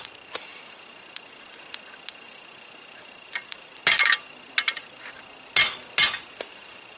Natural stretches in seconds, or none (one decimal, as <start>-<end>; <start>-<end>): 0.5-2.1; 3.8-6.5